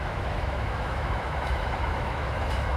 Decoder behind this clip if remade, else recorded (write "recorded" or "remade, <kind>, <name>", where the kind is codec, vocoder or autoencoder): remade, autoencoder, DAC-VAE